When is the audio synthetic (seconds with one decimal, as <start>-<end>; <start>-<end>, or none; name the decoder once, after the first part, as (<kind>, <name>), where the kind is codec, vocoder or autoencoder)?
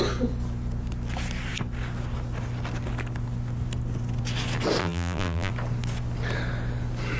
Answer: 4.8-5.5 (vocoder, BigVGAN v2)